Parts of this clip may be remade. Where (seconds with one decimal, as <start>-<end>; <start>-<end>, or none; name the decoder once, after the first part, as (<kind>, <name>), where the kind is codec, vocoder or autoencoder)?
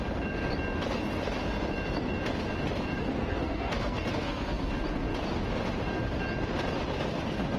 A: 3.0-4.7 (codec, SNAC)